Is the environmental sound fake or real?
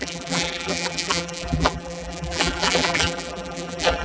fake